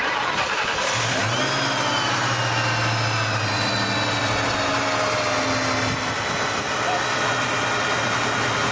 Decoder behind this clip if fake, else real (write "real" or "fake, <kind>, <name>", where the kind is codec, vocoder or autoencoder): real